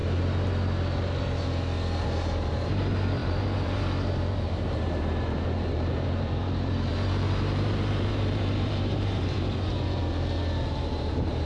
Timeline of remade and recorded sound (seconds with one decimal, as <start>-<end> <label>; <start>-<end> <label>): 0.0-2.0 recorded; 2.0-10.0 remade; 10.0-10.7 recorded; 10.7-11.5 remade